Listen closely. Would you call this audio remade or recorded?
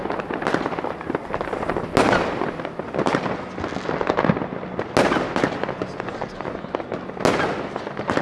recorded